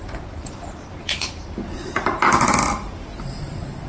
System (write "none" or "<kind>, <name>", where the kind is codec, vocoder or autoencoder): none